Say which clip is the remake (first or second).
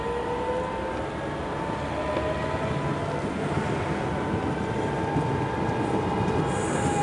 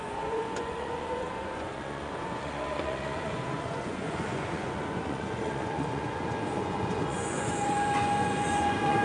second